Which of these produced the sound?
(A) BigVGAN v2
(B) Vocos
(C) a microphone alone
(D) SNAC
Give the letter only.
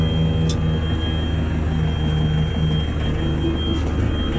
C